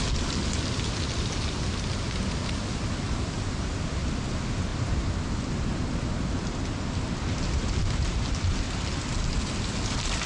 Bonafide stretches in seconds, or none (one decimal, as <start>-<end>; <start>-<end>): 0.0-10.3